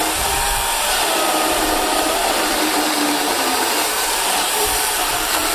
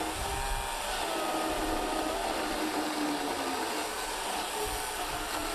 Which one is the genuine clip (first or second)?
second